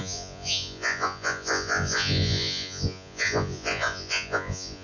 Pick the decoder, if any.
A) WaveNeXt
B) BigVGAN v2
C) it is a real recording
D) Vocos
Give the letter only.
D